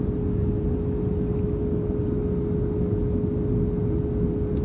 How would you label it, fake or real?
real